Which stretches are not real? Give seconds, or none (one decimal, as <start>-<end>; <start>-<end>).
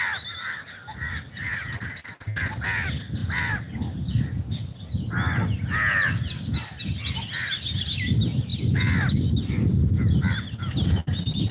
none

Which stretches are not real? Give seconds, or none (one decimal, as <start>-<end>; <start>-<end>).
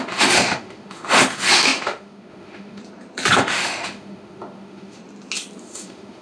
0.0-2.8; 3.4-5.0; 5.6-6.2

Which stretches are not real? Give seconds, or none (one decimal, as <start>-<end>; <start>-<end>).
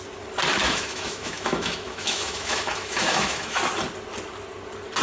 0.6-3.6